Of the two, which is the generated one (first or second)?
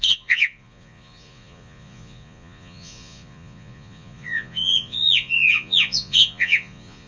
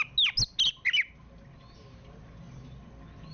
first